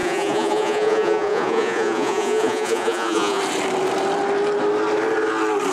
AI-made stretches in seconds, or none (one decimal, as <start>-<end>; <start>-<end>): 0.0-3.4